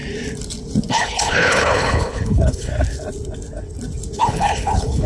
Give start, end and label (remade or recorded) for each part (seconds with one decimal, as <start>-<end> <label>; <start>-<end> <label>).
0.0-0.9 recorded; 0.9-2.7 remade; 2.7-4.2 recorded; 4.2-5.1 remade